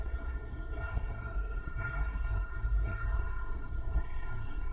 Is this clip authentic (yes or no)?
no